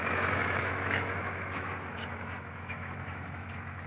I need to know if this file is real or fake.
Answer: fake